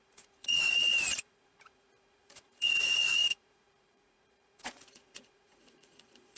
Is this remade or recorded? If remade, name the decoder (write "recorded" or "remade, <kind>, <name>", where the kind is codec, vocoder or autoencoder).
remade, vocoder, Vocos